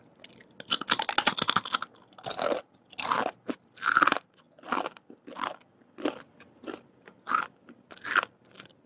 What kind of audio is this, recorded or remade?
recorded